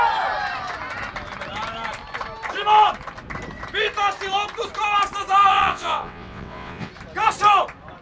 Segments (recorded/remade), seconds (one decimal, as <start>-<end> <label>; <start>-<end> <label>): 0.0-5.5 recorded; 5.5-6.9 remade; 6.9-8.0 recorded